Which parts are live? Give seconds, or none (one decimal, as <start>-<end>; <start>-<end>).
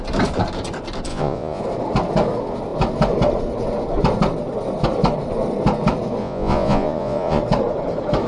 0.0-1.1; 1.6-6.2; 7.4-8.3